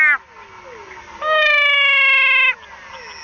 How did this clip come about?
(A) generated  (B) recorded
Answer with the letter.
B